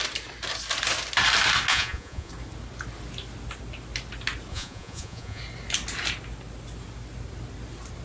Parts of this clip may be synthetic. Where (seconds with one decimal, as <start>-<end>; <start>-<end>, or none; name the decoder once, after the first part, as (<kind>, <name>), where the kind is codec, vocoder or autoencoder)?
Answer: 1.7-2.3 (vocoder, Vocos); 4.5-5.4